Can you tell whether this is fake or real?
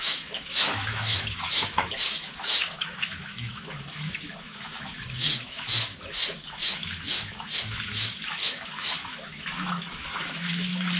fake